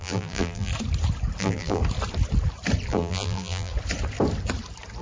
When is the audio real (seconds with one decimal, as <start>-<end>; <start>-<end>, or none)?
0.7-1.4; 1.8-2.9; 3.7-5.0